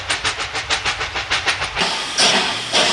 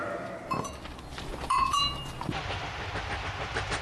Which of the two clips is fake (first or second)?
second